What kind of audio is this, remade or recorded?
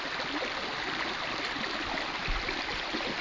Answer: recorded